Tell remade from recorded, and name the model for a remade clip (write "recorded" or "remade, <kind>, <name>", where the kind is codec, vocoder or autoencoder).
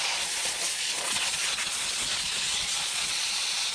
remade, vocoder, Vocos